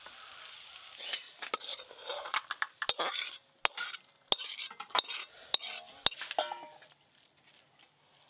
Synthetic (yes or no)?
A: no